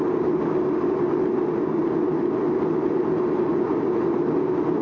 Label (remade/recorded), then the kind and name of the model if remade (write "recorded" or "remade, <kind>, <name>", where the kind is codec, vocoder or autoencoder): recorded